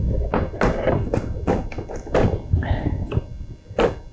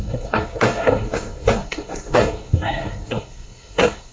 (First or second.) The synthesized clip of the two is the second